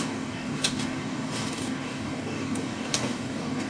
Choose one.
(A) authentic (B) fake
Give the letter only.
B